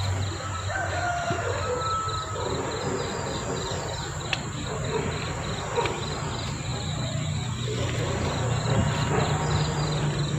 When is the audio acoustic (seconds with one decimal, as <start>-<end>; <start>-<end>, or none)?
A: 0.0-10.4